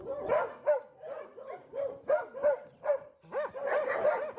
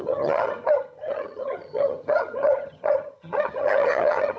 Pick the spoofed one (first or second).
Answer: second